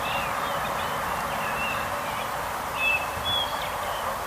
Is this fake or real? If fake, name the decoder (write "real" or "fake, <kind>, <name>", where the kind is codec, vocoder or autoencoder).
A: real